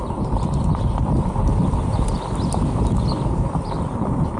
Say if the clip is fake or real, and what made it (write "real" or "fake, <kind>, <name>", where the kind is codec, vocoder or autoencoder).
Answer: fake, vocoder, BigVGAN v2